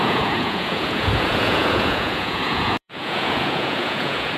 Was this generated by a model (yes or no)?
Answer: yes